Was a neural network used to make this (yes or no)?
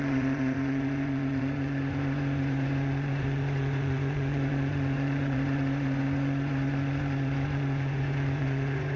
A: yes